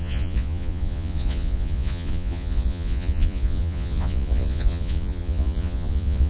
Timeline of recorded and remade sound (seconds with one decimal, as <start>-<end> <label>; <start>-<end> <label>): 0.0-6.3 remade